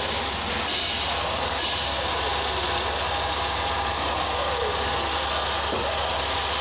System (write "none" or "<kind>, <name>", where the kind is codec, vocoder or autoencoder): none